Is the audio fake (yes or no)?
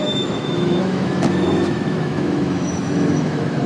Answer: yes